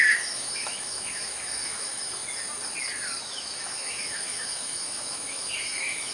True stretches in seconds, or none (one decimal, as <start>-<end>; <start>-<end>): 2.2-3.2